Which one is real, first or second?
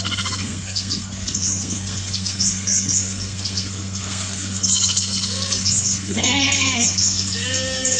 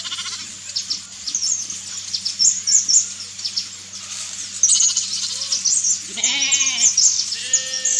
second